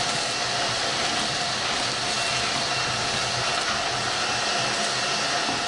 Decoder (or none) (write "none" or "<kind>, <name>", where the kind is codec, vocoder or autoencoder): none